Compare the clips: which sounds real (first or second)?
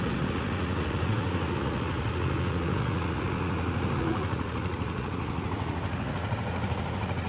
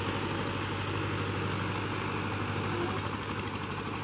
second